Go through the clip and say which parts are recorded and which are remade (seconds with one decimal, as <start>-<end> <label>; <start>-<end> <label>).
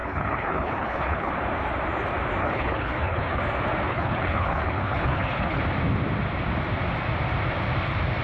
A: 0.0-1.3 remade; 1.3-2.4 recorded; 2.4-3.4 remade; 3.4-3.9 recorded; 3.9-5.6 remade; 5.6-8.2 recorded